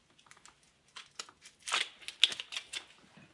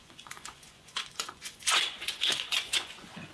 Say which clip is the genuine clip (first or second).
first